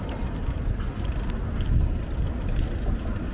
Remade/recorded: recorded